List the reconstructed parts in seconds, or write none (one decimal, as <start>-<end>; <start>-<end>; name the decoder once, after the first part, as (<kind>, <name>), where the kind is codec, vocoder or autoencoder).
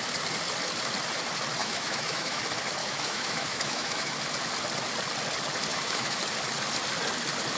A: 1.6-2.4 (autoencoder, DAC-VAE); 2.8-4.1; 5.7-6.2